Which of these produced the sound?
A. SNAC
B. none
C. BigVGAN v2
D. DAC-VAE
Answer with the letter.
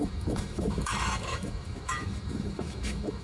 D